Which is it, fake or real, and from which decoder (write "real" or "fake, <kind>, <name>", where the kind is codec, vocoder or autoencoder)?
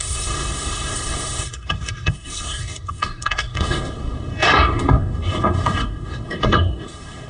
fake, codec, SNAC